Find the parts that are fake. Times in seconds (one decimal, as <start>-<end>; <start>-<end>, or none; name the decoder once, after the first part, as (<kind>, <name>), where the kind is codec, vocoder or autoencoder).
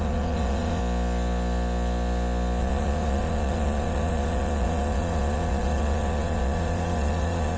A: 0.0-0.8 (vocoder, Vocos); 2.6-7.6